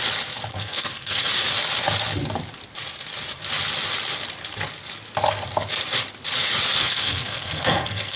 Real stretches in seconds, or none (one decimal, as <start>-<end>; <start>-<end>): 0.0-0.5; 1.3-6.8